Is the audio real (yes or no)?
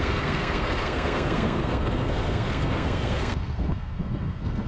no